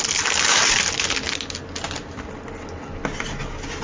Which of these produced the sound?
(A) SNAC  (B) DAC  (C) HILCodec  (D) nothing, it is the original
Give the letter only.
D